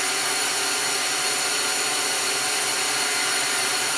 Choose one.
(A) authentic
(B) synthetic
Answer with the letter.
A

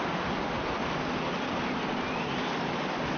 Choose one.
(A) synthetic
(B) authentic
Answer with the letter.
B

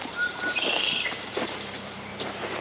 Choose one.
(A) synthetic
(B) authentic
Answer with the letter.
A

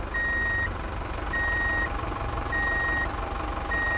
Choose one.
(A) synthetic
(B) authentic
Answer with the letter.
B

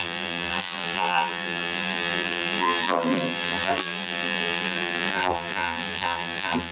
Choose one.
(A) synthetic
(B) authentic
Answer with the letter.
A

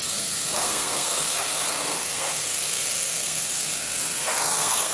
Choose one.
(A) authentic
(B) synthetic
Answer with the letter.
B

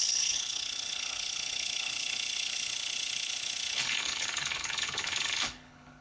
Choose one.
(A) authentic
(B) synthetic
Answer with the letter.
B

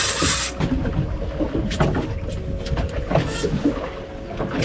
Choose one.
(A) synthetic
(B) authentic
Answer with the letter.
B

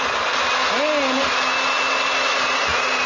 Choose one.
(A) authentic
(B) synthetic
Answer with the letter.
A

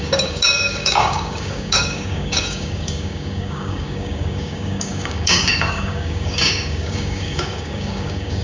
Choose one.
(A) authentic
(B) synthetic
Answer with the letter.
B